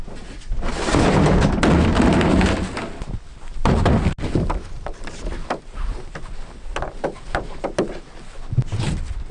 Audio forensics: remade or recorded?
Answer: recorded